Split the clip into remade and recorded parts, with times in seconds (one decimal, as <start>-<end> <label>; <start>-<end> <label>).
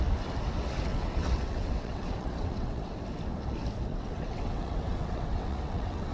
0.0-0.9 recorded; 0.9-2.9 remade; 2.9-3.9 recorded; 3.9-6.1 remade